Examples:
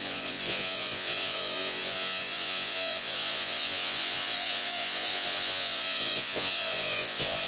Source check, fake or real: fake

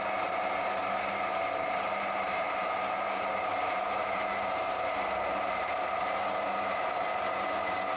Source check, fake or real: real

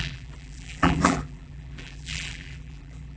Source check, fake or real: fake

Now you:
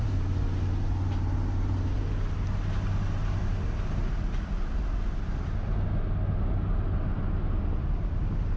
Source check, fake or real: real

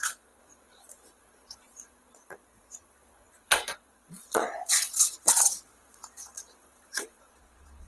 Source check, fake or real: fake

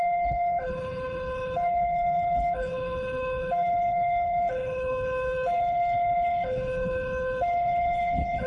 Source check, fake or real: fake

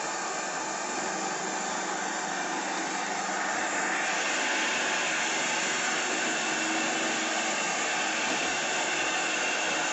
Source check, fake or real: real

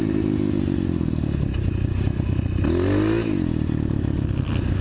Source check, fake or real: real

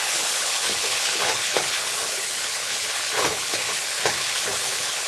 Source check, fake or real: fake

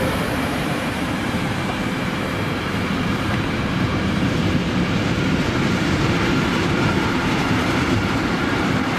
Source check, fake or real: fake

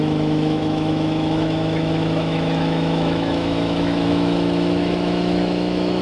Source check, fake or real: fake